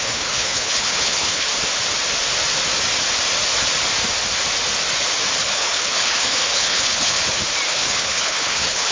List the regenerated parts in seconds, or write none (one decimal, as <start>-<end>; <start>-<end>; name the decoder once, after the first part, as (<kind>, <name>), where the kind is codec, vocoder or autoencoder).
0.0-1.5 (codec, HILCodec); 5.4-7.2; 7.7-8.9